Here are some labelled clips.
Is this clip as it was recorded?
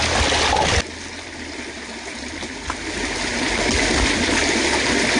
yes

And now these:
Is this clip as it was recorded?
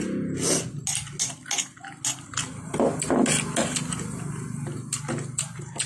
yes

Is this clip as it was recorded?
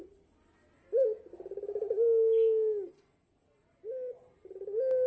yes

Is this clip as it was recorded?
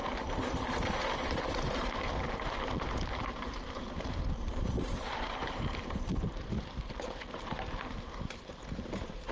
no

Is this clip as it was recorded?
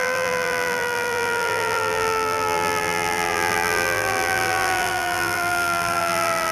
no